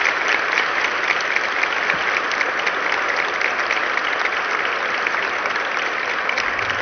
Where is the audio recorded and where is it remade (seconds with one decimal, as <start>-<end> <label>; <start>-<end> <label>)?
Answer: 0.0-6.8 recorded